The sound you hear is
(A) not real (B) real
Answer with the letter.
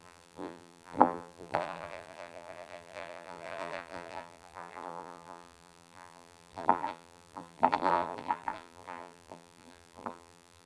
A